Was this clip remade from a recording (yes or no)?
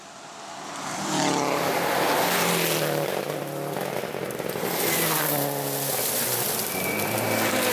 yes